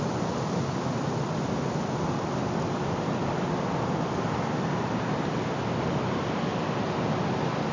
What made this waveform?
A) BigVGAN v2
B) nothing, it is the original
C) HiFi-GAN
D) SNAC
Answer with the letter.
B